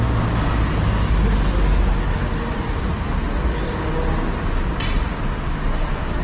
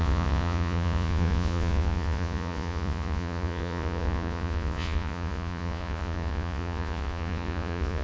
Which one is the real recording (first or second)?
first